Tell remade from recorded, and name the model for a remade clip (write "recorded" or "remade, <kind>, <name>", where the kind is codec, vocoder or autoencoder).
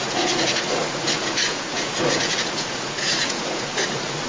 remade, vocoder, Vocos